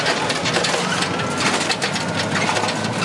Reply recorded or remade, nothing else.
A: recorded